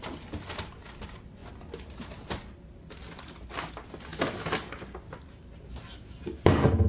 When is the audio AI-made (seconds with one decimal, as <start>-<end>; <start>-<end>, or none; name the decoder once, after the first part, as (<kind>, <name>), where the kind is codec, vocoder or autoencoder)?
none